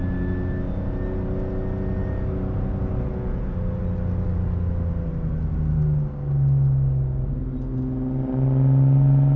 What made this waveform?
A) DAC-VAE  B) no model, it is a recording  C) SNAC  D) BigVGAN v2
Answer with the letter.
B